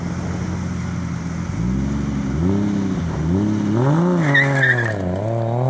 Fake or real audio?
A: real